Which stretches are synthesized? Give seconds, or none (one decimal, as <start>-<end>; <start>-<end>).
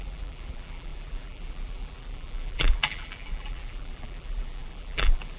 0.0-5.4